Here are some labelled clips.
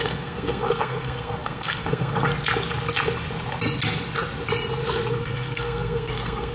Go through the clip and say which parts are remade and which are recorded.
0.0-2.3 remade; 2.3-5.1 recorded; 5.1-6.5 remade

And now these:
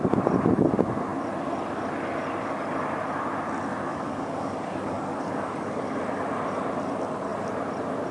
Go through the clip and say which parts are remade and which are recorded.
0.0-3.9 recorded; 3.9-6.0 remade; 6.0-8.1 recorded

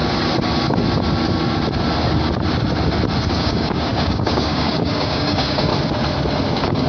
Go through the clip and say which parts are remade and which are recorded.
0.0-3.3 recorded; 3.3-5.7 remade; 5.7-6.5 recorded; 6.5-6.9 remade

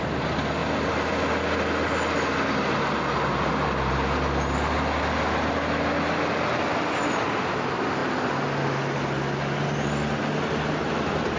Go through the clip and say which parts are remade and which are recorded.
0.0-11.4 recorded

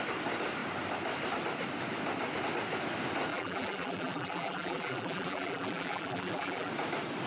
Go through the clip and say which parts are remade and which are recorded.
0.0-3.3 recorded; 3.3-6.7 remade; 6.7-7.3 recorded

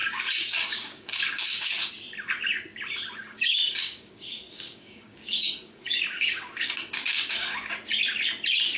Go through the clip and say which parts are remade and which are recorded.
0.0-1.9 remade; 1.9-3.2 recorded; 3.2-7.7 remade; 7.7-8.8 recorded

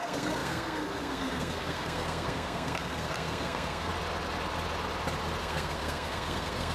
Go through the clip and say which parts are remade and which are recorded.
0.0-3.9 remade; 3.9-5.4 recorded; 5.4-6.7 remade